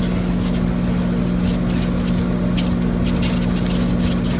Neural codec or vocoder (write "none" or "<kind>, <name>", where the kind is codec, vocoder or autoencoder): none